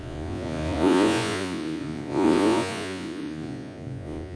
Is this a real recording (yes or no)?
no